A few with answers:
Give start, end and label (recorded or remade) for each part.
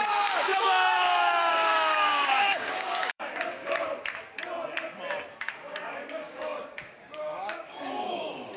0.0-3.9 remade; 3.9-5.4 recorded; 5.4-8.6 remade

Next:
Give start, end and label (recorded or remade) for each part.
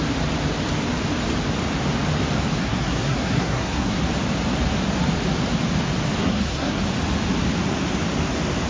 0.0-2.6 recorded; 2.6-4.0 remade; 4.0-6.2 recorded; 6.2-6.8 remade; 6.8-8.7 recorded